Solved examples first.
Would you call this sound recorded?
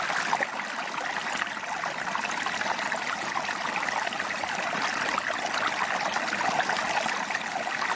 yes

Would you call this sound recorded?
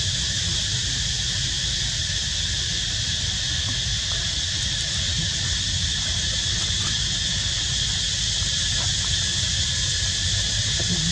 yes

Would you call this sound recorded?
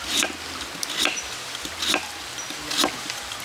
yes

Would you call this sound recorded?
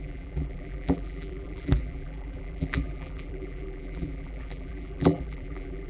no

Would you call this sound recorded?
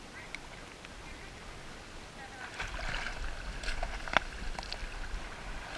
yes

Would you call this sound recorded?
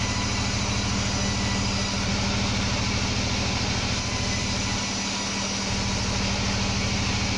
yes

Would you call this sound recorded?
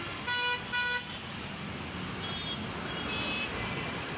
yes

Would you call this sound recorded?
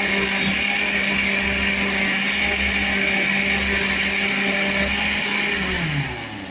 yes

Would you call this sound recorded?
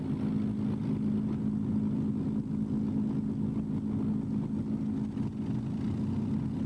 yes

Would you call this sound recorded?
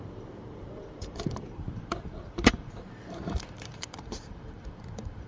no